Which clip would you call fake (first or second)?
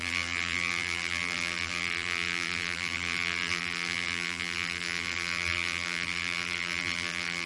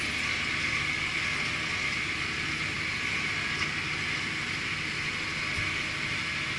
first